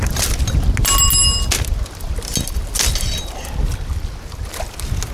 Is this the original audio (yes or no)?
yes